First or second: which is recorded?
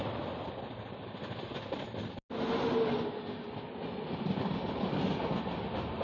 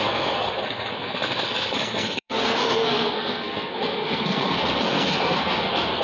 first